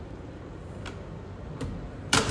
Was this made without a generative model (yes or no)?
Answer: no